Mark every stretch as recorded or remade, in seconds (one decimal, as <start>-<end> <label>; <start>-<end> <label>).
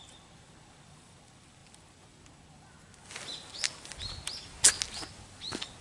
0.0-5.8 recorded